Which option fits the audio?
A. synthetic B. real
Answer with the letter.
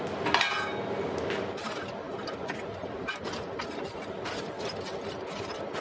B